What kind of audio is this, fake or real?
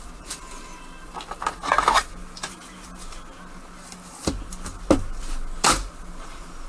real